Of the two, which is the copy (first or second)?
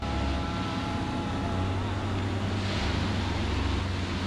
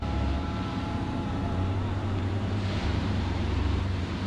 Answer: second